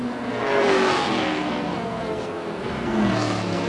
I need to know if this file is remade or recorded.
remade